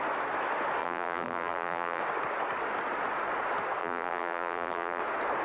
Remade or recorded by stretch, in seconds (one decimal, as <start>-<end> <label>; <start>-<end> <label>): 0.0-0.8 recorded; 0.8-2.0 remade; 2.0-3.8 recorded; 3.8-5.0 remade; 5.0-5.4 recorded